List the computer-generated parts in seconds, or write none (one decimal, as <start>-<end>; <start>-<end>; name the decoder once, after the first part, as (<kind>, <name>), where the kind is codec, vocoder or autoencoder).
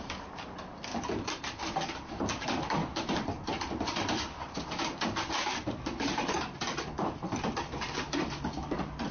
0.0-0.9 (vocoder, BigVGAN v2); 1.6-9.1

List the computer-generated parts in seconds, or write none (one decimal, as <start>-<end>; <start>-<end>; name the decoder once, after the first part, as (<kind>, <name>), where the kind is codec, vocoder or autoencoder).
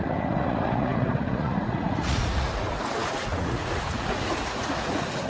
0.0-5.3 (vocoder, Vocos)